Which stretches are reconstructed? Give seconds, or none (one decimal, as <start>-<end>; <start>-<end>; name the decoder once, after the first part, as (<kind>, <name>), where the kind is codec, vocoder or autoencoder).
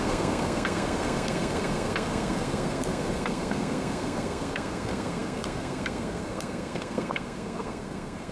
0.0-8.3 (codec, SNAC)